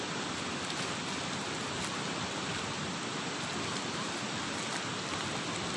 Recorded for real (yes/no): yes